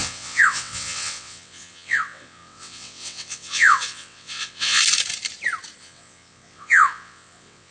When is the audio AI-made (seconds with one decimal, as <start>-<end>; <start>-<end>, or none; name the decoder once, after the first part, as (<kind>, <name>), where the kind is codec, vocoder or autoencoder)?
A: 0.0-4.8 (vocoder, WaveNeXt); 5.8-7.7